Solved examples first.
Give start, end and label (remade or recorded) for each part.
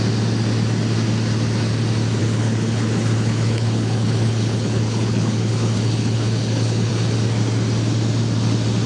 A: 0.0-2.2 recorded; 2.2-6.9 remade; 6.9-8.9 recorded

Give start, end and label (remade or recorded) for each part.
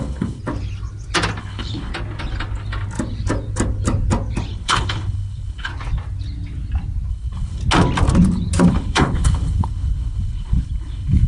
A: 0.0-0.4 remade; 0.4-1.4 recorded; 1.4-1.9 remade; 1.9-4.5 recorded; 4.5-5.7 remade; 5.7-7.1 recorded; 7.1-7.6 remade; 7.6-8.7 recorded; 8.7-11.3 remade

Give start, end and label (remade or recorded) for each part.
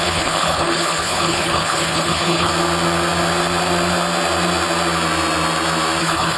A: 0.0-2.5 remade; 2.5-6.0 recorded; 6.0-6.4 remade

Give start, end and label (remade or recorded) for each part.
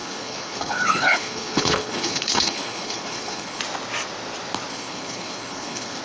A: 0.0-3.6 remade; 3.6-4.7 recorded; 4.7-6.0 remade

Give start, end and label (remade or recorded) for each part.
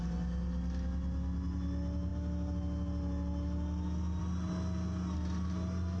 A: 0.0-6.0 recorded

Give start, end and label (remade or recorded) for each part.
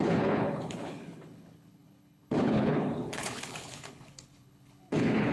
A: 0.0-5.3 remade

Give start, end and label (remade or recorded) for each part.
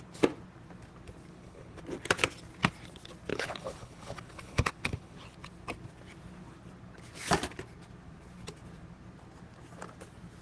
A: 0.0-1.3 recorded; 1.3-1.8 remade; 1.8-3.3 recorded; 3.3-5.2 remade; 5.2-10.4 recorded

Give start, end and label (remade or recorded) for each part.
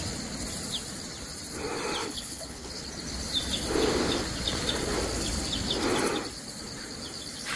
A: 0.0-2.0 recorded; 2.0-2.7 remade; 2.7-7.6 recorded